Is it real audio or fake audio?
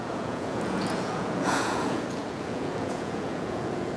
fake